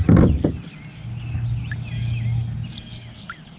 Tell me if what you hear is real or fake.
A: real